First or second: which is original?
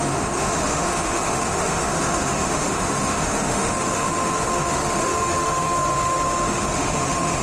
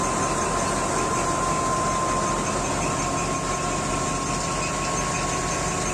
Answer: second